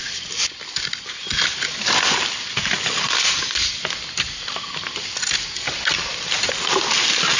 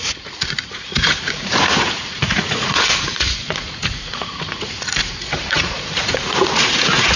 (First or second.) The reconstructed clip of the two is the second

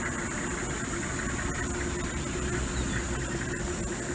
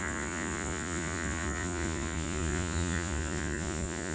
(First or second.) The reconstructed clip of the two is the second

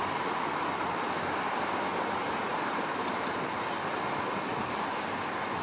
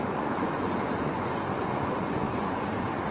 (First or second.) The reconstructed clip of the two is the second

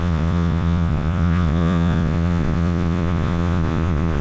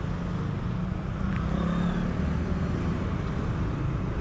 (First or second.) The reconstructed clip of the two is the first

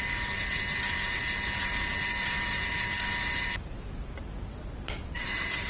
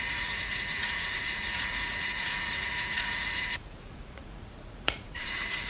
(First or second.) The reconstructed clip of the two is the second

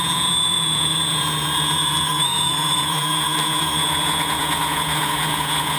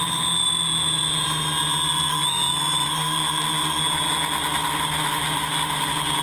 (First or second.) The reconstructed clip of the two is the first